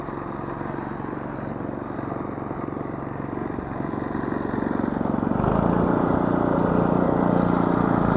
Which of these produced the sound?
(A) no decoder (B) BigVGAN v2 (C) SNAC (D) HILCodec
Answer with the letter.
A